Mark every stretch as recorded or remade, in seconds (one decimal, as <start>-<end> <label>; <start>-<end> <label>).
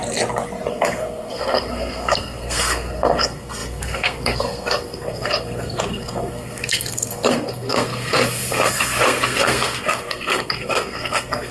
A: 0.0-0.7 recorded; 0.7-11.5 remade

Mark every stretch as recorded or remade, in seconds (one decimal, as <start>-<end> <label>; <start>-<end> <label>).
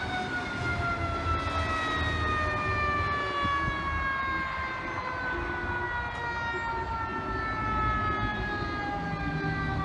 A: 0.0-9.8 recorded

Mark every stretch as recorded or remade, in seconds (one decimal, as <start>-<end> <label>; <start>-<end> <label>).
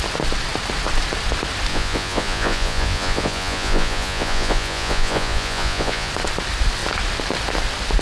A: 0.0-1.7 recorded; 1.7-6.1 remade; 6.1-8.0 recorded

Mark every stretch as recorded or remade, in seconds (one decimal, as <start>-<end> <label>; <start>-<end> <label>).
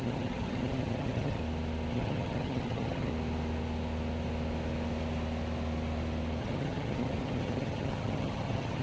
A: 0.0-1.4 remade; 1.4-1.9 recorded; 1.9-3.1 remade; 3.1-6.4 recorded; 6.4-8.8 remade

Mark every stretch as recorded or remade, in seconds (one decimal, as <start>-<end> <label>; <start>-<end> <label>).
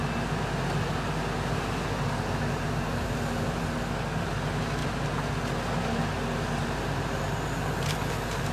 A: 0.0-8.5 recorded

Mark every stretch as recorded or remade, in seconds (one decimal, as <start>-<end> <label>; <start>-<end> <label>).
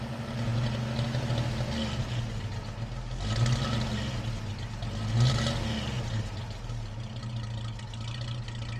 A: 0.0-8.8 recorded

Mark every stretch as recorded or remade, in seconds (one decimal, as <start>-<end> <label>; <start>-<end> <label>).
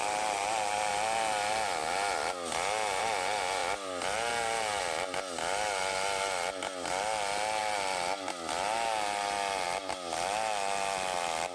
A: 0.0-0.9 remade; 0.9-11.5 recorded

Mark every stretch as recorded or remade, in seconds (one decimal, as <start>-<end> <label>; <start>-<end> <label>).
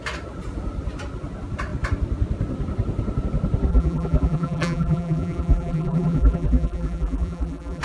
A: 0.0-3.7 recorded; 3.7-7.8 remade